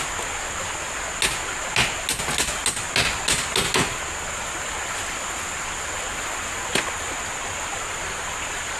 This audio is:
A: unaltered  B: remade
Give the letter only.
A